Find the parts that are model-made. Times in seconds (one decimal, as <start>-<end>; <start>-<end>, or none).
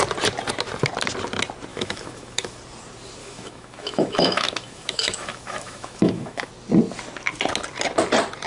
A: 1.7-2.6; 3.2-6.5